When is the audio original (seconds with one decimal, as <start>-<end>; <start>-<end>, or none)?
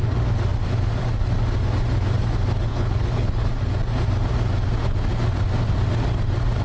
0.0-2.7; 3.5-6.6